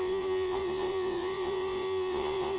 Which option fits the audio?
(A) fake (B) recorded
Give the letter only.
A